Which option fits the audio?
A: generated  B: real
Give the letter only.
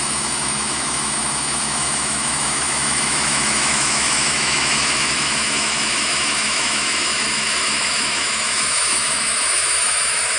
A